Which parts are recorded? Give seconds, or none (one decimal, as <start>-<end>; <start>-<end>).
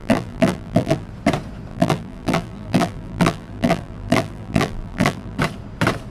1.1-1.7; 5.4-6.1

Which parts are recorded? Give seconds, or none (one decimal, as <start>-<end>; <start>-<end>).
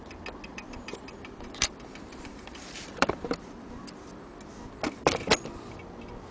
0.0-0.5; 4.3-6.3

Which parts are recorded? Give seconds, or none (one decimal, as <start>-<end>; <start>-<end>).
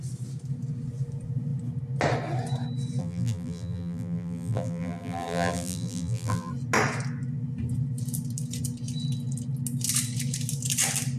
0.0-3.0; 6.5-11.2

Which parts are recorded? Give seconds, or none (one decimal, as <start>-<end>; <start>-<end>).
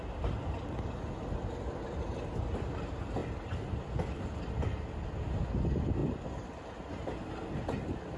0.0-4.7; 5.2-8.2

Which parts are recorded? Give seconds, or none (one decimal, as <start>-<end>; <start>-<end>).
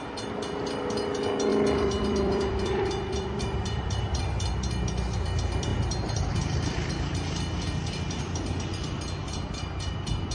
0.0-1.5; 4.5-5.7; 7.3-9.2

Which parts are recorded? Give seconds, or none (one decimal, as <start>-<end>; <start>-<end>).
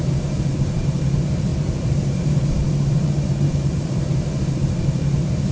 none